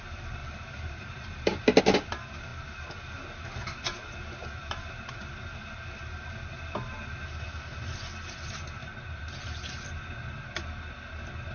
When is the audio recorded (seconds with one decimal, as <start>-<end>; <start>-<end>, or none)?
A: 0.0-0.4; 1.8-8.8; 9.8-11.5